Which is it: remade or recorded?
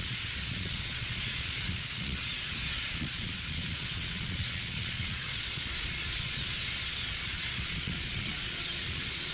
remade